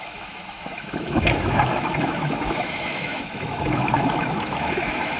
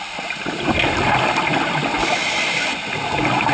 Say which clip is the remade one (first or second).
first